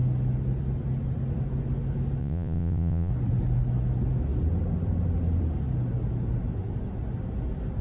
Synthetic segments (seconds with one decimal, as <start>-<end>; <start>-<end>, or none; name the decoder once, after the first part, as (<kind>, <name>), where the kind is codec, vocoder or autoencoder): 2.2-3.1 (vocoder, Vocos)